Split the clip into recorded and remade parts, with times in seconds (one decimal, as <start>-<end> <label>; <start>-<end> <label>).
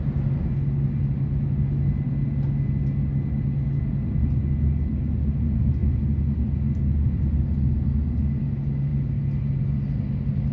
0.0-10.5 recorded